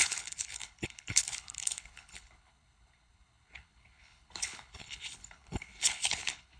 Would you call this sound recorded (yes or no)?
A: no